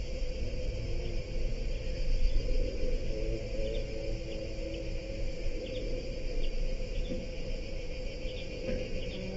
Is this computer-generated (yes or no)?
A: no